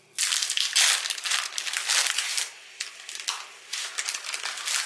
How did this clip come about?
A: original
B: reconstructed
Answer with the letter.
A